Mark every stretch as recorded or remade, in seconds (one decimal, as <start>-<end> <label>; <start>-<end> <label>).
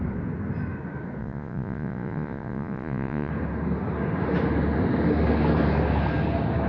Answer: 0.0-1.2 recorded; 1.2-3.3 remade; 3.3-6.7 recorded